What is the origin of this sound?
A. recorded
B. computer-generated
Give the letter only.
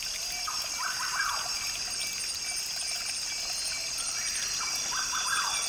A